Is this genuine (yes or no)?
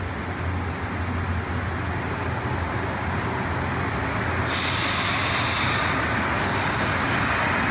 yes